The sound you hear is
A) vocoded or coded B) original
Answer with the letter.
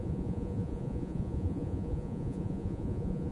A